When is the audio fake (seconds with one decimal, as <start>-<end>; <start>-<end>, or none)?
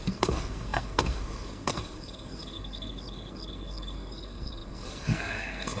0.0-5.8